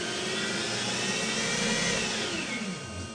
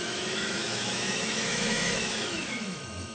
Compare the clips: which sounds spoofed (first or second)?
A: second